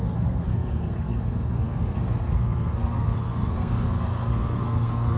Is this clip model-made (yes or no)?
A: yes